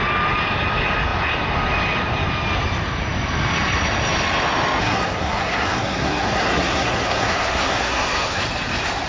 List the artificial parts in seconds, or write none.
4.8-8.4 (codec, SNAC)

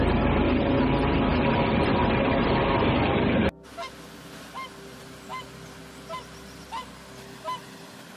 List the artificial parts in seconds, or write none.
none

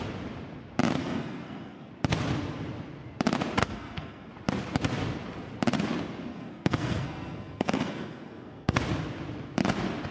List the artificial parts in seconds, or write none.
1.0-1.9 (codec, SNAC); 3.6-4.3; 6.3-8.8

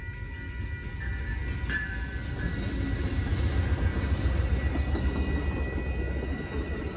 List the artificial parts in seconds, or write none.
none

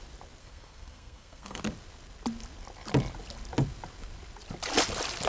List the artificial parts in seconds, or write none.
0.4-1.6 (codec, SNAC)

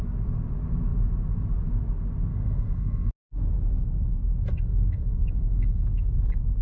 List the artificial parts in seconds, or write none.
2.3-3.1 (codec, SNAC); 4.5-6.1